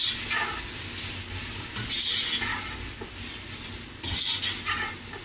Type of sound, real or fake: real